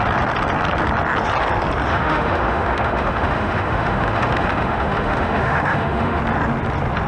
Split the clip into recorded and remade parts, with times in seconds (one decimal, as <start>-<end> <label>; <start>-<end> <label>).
0.0-1.9 recorded; 1.9-6.2 remade; 6.2-7.1 recorded